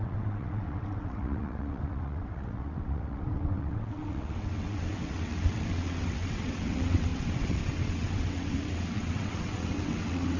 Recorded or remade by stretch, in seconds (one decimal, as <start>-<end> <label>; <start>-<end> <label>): 0.0-10.4 remade